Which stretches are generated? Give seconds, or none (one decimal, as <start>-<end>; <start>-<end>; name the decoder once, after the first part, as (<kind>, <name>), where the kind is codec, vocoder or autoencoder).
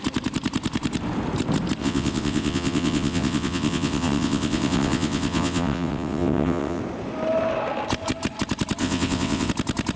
1.8-6.8 (vocoder, WaveNeXt); 8.8-9.5